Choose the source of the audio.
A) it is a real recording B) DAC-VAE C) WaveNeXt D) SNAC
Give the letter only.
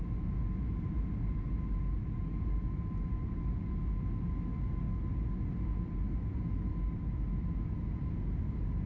A